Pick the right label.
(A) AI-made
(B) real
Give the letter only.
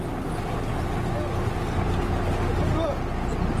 B